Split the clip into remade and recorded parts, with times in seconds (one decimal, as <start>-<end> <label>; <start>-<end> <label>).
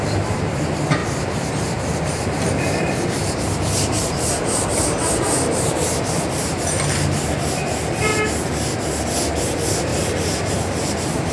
0.0-1.0 remade; 1.0-1.6 recorded; 1.6-8.1 remade; 8.1-9.4 recorded; 9.4-9.9 remade; 9.9-10.7 recorded; 10.7-11.3 remade